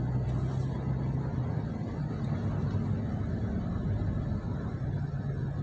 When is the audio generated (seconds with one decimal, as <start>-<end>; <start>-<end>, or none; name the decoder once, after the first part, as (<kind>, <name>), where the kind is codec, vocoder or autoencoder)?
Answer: none